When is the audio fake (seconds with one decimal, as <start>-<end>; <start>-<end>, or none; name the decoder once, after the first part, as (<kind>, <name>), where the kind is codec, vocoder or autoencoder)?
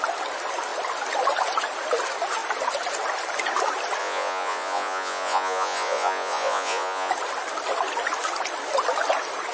4.0-7.1 (vocoder, Vocos)